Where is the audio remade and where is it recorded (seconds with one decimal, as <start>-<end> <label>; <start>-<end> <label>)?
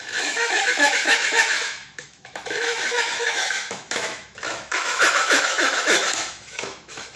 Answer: 0.0-7.2 remade